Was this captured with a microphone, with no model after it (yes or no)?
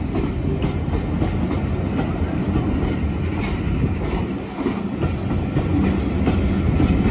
yes